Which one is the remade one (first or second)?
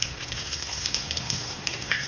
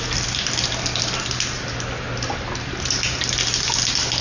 first